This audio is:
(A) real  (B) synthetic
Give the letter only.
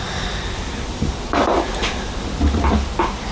A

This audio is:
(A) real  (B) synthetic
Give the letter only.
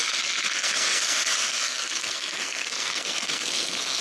B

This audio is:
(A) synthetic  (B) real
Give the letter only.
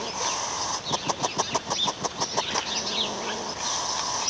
B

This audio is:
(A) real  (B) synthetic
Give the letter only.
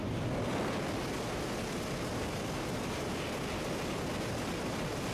A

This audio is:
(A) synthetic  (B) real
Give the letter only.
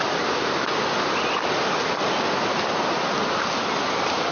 B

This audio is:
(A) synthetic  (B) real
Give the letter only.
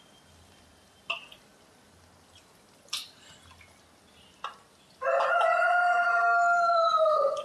B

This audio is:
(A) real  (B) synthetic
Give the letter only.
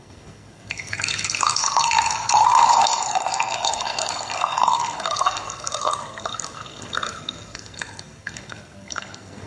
B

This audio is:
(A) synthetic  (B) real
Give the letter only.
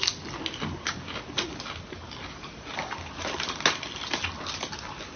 B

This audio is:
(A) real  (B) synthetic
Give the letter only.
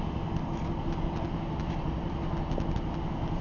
A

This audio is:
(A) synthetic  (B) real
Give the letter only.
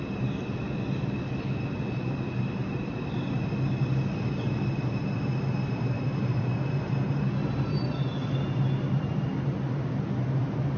B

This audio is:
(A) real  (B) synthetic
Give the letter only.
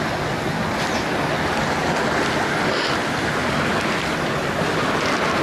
A